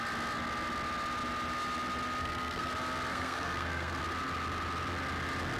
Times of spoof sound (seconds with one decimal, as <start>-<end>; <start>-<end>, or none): 2.2-2.7; 3.1-4.0